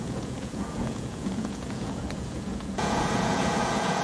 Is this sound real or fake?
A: fake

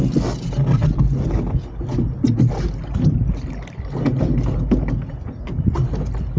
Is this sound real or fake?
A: real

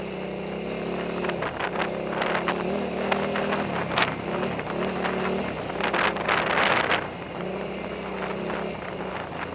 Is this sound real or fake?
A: real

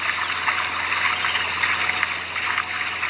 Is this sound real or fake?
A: real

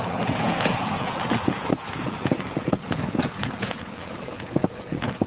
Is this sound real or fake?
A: fake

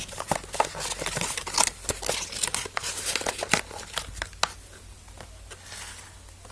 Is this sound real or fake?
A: real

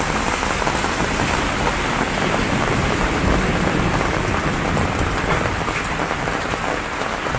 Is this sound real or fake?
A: real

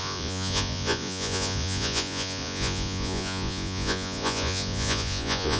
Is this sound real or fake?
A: fake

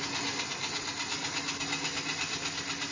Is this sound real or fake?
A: real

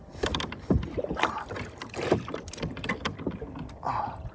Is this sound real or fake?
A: real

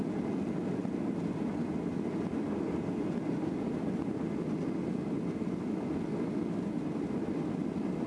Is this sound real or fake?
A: real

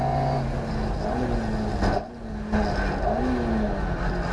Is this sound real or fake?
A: real